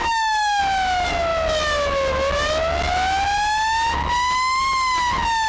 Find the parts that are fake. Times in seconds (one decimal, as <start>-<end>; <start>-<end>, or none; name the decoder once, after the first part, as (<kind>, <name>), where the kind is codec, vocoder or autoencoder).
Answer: 0.0-0.6 (autoencoder, DAC-VAE)